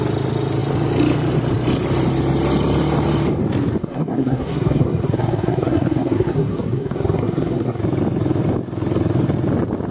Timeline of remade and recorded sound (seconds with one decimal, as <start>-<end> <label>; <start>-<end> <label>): 0.0-3.8 recorded; 3.8-7.8 remade; 7.8-9.9 recorded